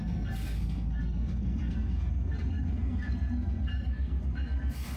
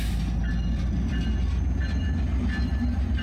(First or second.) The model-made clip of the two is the first